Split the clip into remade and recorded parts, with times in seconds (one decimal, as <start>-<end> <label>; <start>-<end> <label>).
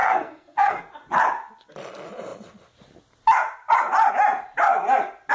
0.0-0.8 remade; 0.8-5.3 recorded